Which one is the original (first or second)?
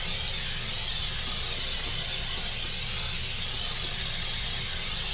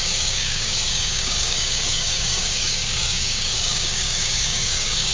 first